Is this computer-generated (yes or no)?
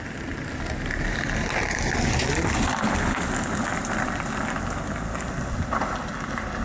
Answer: no